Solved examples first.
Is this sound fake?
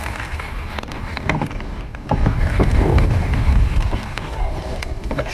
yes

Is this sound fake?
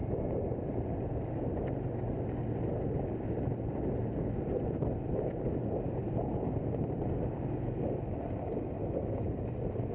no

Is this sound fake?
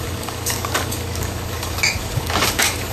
yes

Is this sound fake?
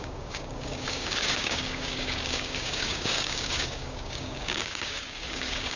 yes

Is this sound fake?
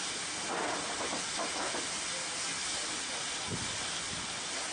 no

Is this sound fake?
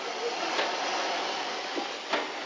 no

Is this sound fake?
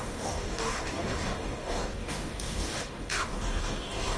yes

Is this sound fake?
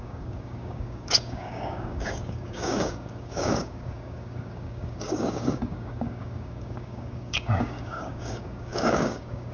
yes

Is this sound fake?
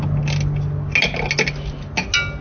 no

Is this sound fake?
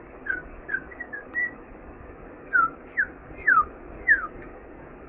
yes